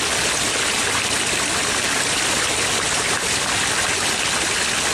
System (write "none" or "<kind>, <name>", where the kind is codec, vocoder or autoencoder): none